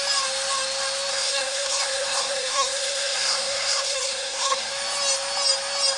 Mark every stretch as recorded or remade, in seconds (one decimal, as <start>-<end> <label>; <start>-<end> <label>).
0.0-1.1 recorded; 1.1-4.7 remade; 4.7-6.0 recorded